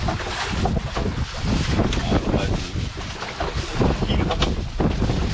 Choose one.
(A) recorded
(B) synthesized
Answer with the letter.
A